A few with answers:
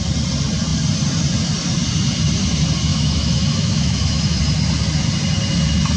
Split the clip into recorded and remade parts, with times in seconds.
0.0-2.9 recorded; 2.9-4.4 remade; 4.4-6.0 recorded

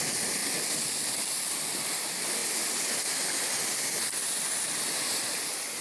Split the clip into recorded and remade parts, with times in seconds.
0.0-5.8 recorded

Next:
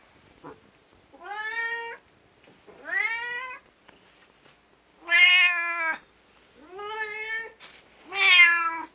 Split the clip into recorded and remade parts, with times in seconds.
0.0-5.3 recorded; 5.3-6.1 remade; 6.1-8.9 recorded

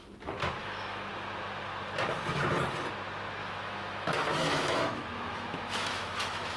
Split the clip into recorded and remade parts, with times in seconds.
0.0-0.6 recorded; 0.6-1.1 remade; 1.1-3.4 recorded; 3.4-6.6 remade